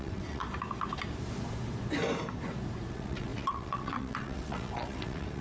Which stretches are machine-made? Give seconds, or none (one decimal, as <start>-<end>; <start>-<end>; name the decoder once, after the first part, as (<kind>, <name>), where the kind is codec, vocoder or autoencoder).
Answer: 0.0-0.4 (vocoder, WaveNeXt); 2.9-5.4